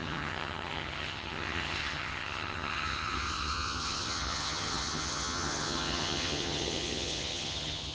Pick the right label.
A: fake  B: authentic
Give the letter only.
A